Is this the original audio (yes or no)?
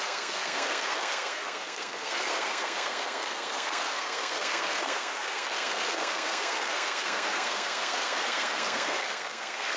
no